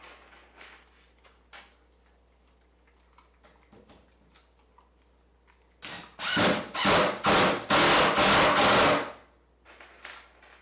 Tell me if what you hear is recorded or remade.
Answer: recorded